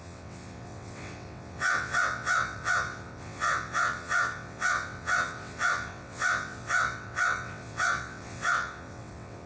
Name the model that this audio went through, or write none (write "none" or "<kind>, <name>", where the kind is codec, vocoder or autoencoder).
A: vocoder, WaveNeXt